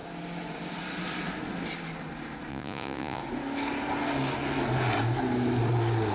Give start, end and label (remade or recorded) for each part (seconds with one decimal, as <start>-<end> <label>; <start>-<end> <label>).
0.0-2.5 recorded; 2.5-3.2 remade; 3.2-6.1 recorded